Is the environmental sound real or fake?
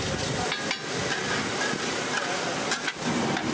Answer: real